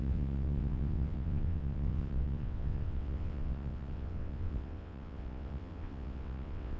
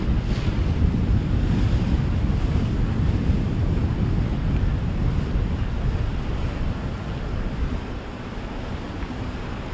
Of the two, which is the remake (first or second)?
first